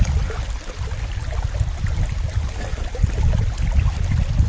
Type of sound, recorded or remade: recorded